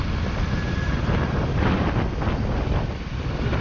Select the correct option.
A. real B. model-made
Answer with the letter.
A